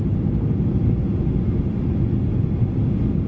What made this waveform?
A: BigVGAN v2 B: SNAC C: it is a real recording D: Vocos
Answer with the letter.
C